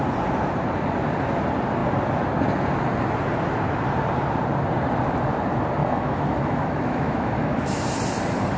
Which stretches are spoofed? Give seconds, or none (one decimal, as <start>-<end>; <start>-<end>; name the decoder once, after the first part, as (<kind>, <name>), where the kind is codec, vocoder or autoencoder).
5.8-7.8 (autoencoder, DAC-VAE)